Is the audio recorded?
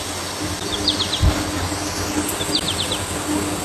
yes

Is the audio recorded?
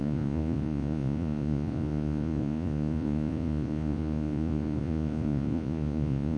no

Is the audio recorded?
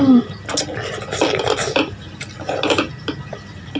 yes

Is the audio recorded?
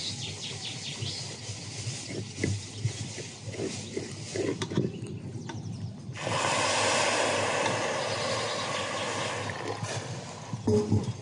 yes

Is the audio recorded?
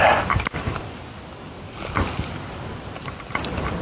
yes